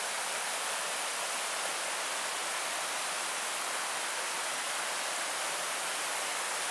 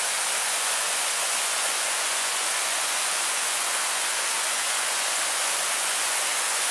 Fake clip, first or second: second